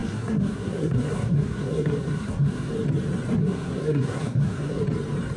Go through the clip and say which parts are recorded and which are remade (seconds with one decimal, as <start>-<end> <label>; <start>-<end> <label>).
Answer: 0.0-2.7 remade; 2.7-3.4 recorded; 3.4-4.8 remade; 4.8-5.4 recorded